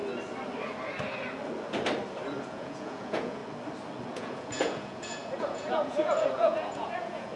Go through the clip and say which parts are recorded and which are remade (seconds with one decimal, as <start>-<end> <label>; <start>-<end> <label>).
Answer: 0.0-2.4 recorded; 2.4-3.4 remade; 3.4-4.1 recorded; 4.1-7.4 remade